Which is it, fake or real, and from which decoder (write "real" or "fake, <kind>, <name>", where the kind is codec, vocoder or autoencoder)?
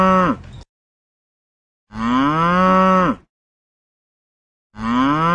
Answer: real